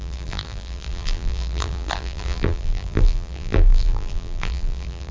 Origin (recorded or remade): remade